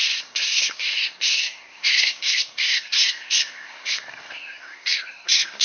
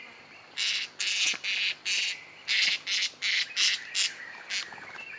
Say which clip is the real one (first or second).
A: second